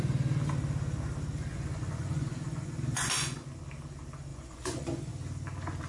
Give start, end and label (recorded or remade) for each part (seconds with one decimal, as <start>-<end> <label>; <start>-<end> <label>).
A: 0.0-1.5 recorded; 1.5-3.5 remade; 3.5-4.3 recorded; 4.3-5.1 remade; 5.1-5.9 recorded